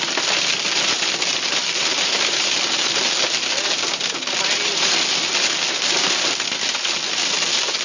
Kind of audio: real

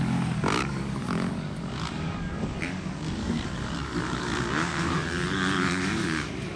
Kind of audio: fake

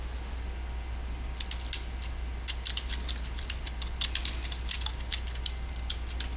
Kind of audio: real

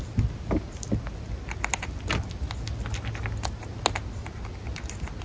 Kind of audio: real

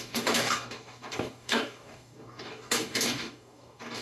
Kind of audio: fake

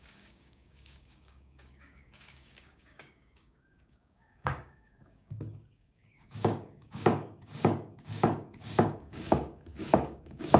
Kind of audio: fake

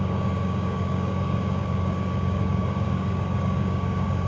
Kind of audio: fake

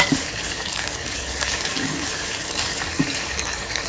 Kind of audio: fake